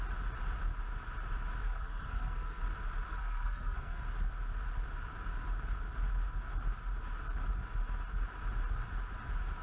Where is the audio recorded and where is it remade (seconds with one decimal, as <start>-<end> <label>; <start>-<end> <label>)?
0.0-1.6 recorded; 1.6-2.7 remade; 2.7-3.1 recorded; 3.1-4.0 remade; 4.0-9.6 recorded